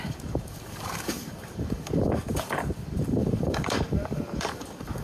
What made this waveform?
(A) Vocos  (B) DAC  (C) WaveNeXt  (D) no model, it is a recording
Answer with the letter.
B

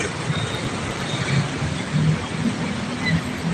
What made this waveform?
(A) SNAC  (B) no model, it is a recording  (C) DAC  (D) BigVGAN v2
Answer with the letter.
B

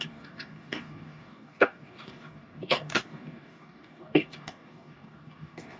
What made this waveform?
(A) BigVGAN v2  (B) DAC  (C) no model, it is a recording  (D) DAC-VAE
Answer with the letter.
B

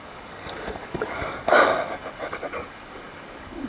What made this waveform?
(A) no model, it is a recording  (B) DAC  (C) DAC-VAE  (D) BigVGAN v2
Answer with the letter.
B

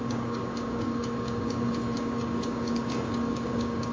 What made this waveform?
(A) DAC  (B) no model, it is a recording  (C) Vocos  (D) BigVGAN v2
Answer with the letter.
A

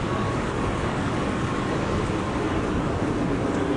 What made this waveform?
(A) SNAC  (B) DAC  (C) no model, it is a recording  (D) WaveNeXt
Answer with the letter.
B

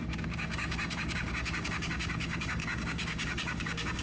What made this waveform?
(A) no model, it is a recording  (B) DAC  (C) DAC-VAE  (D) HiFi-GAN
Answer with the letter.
B